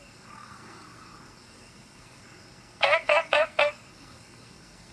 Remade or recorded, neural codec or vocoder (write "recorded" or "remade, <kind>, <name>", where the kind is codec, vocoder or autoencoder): remade, codec, SNAC